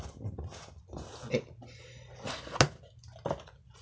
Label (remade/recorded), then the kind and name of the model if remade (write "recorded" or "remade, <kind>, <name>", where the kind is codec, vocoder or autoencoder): recorded